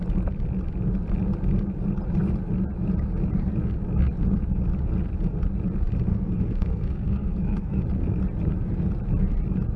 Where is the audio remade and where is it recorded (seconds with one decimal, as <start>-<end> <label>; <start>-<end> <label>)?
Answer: 0.0-6.1 recorded; 6.1-7.8 remade; 7.8-9.8 recorded